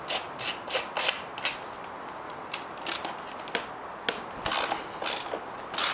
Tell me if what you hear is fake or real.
real